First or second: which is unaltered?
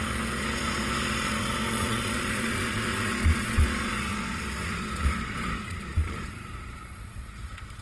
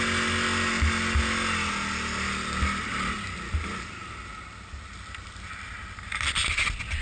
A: second